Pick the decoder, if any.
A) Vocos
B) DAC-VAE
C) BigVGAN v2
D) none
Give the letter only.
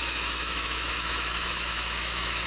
B